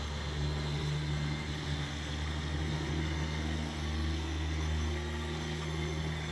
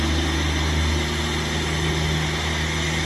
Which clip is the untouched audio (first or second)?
second